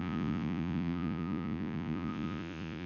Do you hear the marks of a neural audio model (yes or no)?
yes